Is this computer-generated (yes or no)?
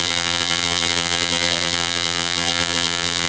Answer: yes